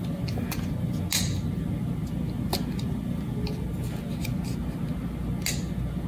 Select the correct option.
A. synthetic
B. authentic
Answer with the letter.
B